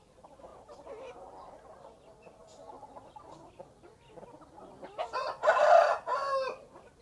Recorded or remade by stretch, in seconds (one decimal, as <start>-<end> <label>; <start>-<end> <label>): 0.0-7.0 recorded